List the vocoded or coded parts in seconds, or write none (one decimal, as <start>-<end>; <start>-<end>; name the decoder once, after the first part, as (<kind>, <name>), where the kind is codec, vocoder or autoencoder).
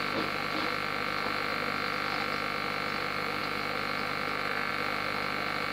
0.0-1.5 (vocoder, BigVGAN v2); 3.0-5.7